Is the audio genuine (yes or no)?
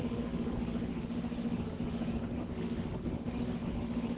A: no